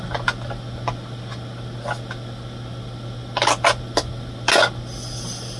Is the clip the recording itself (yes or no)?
yes